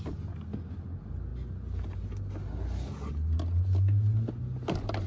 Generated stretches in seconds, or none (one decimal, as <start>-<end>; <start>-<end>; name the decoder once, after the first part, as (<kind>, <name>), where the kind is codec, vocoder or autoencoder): none